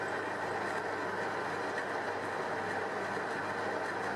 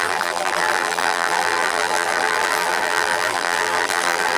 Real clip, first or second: first